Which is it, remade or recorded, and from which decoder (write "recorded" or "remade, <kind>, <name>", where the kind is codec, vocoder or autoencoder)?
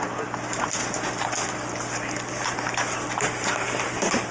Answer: recorded